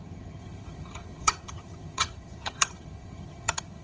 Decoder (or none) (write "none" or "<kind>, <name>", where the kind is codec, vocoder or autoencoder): vocoder, HiFi-GAN